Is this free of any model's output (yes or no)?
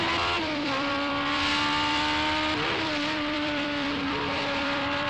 no